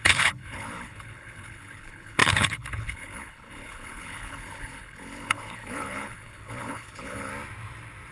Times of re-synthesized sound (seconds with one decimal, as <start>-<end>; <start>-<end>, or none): 0.0-7.3